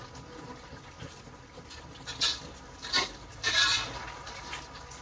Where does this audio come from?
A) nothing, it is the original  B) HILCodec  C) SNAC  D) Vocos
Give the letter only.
A